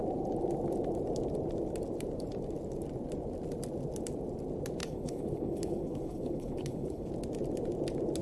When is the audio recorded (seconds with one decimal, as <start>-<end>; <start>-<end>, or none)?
0.0-4.8; 7.1-8.2